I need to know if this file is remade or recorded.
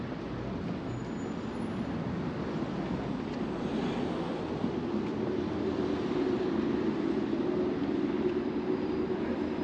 recorded